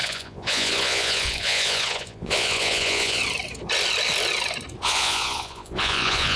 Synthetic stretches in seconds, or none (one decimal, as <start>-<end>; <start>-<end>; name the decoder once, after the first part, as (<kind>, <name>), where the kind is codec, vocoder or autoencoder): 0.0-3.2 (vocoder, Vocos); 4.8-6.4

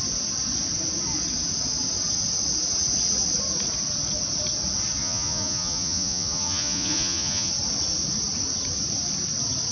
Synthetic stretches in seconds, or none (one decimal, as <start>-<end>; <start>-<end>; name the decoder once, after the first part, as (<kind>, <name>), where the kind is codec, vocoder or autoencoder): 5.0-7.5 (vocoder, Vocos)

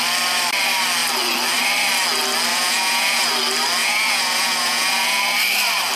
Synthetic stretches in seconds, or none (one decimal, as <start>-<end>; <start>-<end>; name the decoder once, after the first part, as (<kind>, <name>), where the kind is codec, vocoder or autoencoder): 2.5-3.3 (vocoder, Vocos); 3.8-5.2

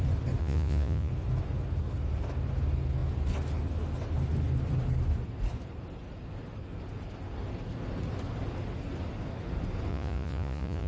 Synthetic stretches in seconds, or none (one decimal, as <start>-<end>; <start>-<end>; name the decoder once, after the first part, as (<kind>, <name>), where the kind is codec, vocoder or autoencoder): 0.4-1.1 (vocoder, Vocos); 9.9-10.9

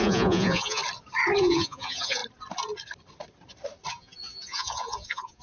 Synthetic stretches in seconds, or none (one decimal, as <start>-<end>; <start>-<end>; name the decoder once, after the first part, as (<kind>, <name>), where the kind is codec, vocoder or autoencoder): 0.0-0.8 (vocoder, Vocos); 1.4-2.2; 3.9-5.4